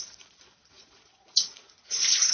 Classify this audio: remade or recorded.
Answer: remade